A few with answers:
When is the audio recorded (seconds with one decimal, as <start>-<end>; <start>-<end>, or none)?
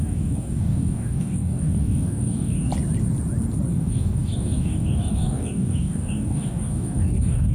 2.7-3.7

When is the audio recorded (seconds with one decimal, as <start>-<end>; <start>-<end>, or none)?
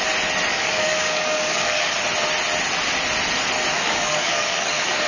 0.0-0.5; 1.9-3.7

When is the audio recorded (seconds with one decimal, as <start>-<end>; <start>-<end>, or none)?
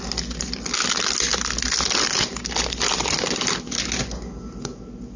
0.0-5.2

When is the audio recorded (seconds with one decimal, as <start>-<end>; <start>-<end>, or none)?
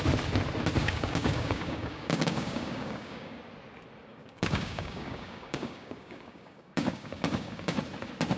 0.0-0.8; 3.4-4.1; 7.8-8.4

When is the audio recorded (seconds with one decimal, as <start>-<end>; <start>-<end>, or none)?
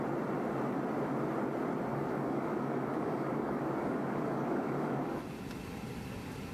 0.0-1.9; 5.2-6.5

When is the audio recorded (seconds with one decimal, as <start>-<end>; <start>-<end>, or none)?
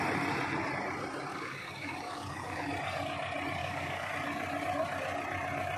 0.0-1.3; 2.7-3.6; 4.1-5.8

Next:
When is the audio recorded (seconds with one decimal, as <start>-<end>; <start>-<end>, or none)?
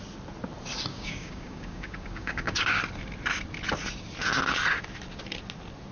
0.0-0.9; 2.8-5.9